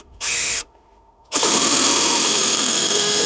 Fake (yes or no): yes